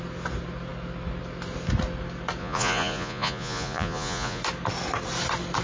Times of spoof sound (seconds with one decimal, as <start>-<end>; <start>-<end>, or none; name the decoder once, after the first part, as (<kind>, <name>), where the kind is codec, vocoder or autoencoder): 2.4-4.4 (vocoder, Vocos)

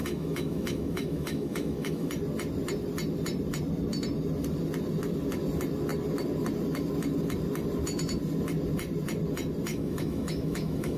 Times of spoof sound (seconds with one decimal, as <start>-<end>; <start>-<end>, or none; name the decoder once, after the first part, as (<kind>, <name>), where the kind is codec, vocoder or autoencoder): 0.0-2.1 (autoencoder, DAC-VAE); 9.7-11.0

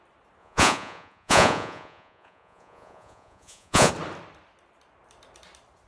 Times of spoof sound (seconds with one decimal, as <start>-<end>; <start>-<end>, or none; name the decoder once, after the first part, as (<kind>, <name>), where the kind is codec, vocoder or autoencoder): 0.4-3.9 (vocoder, Vocos)

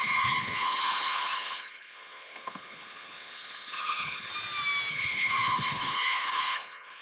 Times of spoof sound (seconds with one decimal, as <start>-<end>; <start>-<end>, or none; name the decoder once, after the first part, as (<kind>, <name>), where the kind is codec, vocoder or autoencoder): 0.0-4.3 (codec, HILCodec); 4.9-7.0

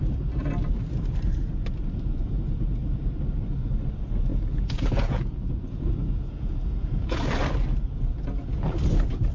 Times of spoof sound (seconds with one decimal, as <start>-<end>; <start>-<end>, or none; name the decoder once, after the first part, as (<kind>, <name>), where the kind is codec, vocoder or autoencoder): 4.3-7.2 (vocoder, Vocos)

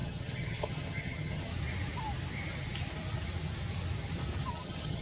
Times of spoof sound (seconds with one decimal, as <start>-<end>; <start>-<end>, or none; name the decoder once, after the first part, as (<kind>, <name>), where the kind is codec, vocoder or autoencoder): 0.0-1.5 (vocoder, HiFi-GAN); 4.5-5.0

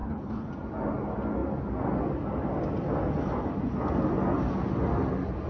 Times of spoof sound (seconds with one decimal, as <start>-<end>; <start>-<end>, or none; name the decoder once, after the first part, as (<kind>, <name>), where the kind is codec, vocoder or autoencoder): 0.0-0.5 (codec, HILCodec)

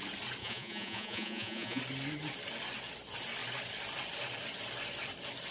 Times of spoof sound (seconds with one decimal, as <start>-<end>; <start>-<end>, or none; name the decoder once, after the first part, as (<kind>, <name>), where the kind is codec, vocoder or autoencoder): 0.4-1.8 (vocoder, Vocos)